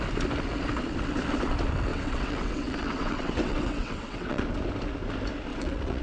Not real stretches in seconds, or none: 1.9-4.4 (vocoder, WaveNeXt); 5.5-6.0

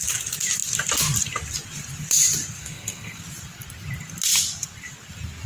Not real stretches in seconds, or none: 2.6-3.2 (codec, SNAC)

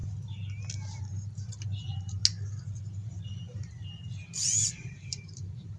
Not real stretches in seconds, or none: 1.0-2.2 (vocoder, BigVGAN v2); 4.7-5.8